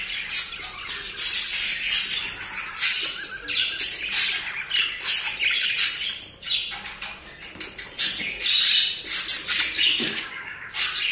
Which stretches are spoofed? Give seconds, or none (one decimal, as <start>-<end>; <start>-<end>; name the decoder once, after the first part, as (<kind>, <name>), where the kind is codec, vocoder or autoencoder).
9.9-10.7 (codec, DAC)

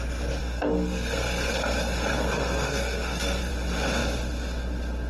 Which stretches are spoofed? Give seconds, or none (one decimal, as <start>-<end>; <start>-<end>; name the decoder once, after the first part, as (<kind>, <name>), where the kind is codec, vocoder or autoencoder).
0.4-3.5 (codec, SNAC)

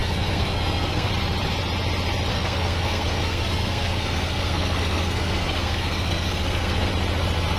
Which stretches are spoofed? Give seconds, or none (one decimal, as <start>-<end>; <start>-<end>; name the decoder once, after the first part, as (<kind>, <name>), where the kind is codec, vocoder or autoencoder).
0.0-1.1 (codec, SNAC); 2.3-6.9

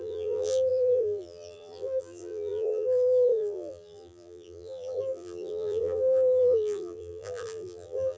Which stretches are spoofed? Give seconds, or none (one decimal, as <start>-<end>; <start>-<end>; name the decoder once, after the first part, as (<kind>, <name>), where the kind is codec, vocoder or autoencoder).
0.0-8.2 (vocoder, BigVGAN v2)

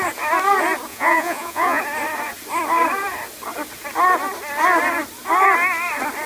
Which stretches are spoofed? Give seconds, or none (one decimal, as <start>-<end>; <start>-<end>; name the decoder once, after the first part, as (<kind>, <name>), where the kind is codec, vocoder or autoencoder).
0.9-1.8 (vocoder, Vocos)

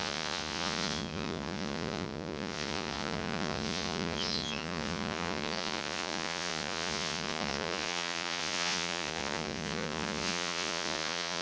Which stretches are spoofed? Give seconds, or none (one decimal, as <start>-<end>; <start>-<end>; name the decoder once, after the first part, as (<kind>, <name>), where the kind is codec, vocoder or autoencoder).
0.0-11.4 (vocoder, Vocos)